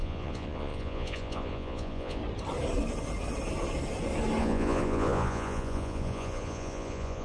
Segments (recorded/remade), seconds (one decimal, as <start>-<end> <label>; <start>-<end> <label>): 0.0-2.2 remade; 2.2-4.4 recorded; 4.4-7.2 remade